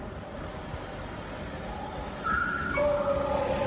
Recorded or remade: recorded